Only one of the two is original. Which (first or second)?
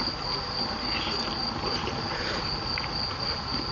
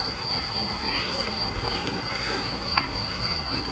first